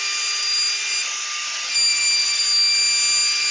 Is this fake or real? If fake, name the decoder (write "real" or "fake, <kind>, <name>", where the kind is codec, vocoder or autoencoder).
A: real